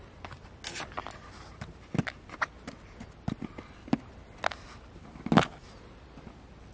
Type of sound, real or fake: real